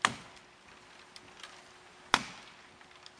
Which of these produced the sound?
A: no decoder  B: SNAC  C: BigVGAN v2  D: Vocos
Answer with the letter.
A